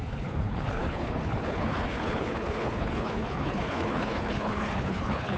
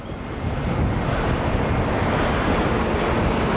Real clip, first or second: second